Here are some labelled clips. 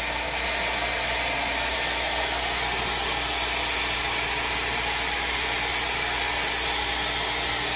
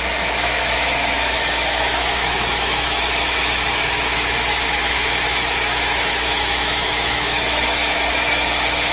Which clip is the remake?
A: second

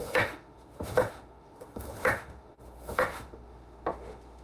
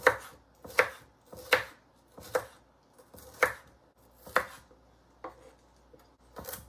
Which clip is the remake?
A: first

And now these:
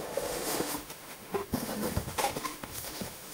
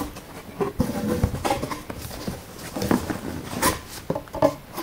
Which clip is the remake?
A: first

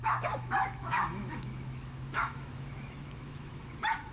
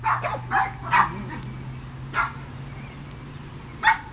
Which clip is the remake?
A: first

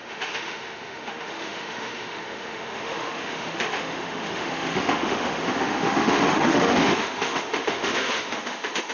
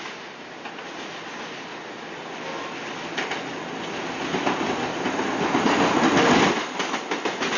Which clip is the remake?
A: first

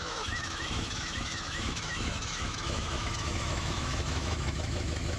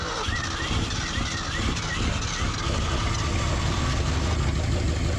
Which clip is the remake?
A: first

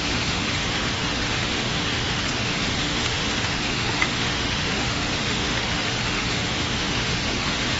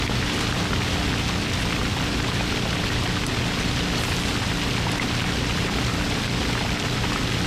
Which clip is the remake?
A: first